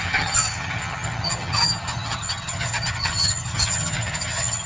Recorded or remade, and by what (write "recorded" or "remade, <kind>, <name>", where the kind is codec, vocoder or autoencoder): remade, vocoder, HiFi-GAN